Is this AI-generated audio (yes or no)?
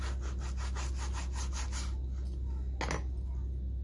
no